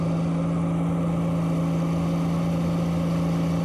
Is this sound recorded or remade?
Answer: recorded